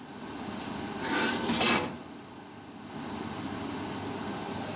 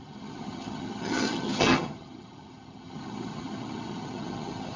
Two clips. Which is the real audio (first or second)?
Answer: first